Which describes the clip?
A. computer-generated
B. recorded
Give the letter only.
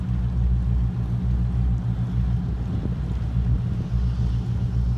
B